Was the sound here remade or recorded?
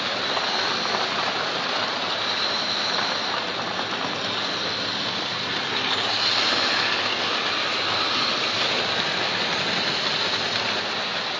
recorded